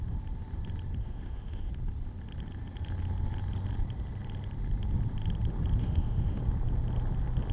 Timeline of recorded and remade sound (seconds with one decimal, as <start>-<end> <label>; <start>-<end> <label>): 0.0-1.0 recorded; 1.0-1.7 remade; 1.7-5.8 recorded; 5.8-6.4 remade; 6.4-7.5 recorded